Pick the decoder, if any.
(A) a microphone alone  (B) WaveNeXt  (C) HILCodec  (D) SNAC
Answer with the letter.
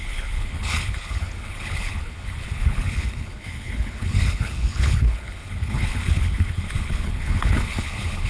C